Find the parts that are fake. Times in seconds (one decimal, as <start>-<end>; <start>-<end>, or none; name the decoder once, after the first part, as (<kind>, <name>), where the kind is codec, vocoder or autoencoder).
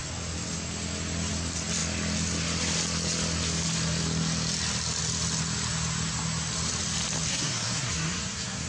7.3-8.7 (codec, SNAC)